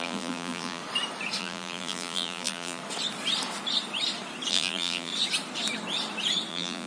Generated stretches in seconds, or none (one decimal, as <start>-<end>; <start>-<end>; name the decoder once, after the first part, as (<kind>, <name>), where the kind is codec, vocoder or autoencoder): 0.0-0.8 (vocoder, BigVGAN v2); 1.4-2.8; 4.5-5.1; 6.5-6.9